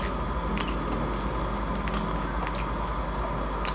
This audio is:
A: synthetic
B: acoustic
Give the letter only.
B